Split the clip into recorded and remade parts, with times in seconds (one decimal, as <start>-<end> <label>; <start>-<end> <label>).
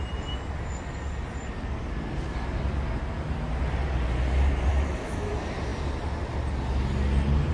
0.0-4.7 recorded; 4.7-5.3 remade; 5.3-7.5 recorded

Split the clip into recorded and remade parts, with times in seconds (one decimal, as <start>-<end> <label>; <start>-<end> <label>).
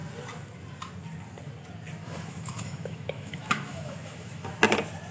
0.0-2.0 recorded; 2.0-4.6 remade; 4.6-5.1 recorded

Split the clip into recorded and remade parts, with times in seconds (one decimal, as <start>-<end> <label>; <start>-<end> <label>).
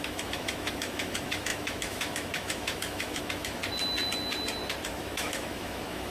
0.0-3.6 remade; 3.6-4.9 recorded; 4.9-6.1 remade